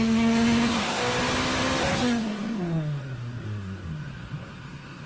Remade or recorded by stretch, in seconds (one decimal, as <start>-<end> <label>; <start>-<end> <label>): 0.0-1.0 remade; 1.0-1.8 recorded; 1.8-5.1 remade